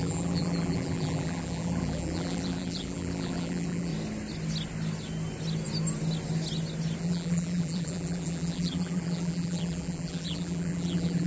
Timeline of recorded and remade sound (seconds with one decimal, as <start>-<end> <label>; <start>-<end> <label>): 0.0-3.9 remade; 3.9-7.0 recorded; 7.0-11.3 remade

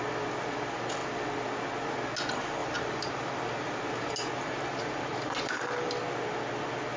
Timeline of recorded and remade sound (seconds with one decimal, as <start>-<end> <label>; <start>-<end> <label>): 0.0-2.6 recorded; 2.6-5.3 remade; 5.3-7.0 recorded

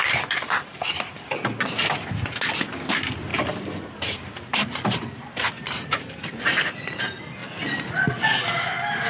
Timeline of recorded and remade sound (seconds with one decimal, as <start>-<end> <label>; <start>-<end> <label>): 0.0-3.3 recorded; 3.3-6.4 remade; 6.4-9.1 recorded

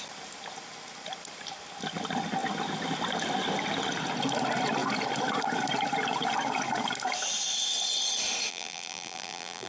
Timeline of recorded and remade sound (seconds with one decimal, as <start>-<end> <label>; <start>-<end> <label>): 0.0-8.5 recorded; 8.5-9.7 remade

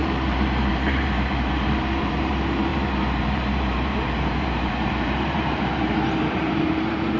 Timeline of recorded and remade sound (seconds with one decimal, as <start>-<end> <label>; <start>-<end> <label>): 0.0-7.2 remade

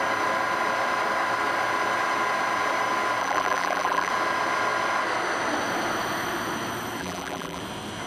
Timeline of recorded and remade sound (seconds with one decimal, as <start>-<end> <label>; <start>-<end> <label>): 0.0-3.2 recorded; 3.2-4.1 remade; 4.1-7.0 recorded; 7.0-7.6 remade; 7.6-8.1 recorded

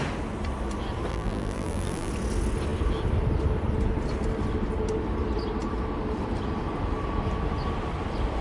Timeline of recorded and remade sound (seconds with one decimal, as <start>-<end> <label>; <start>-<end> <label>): 0.0-1.1 recorded; 1.1-2.1 remade; 2.1-8.4 recorded

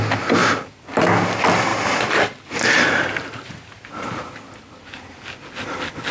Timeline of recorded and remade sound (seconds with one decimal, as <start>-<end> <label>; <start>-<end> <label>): 0.0-1.7 recorded; 1.7-3.5 remade; 3.5-6.1 recorded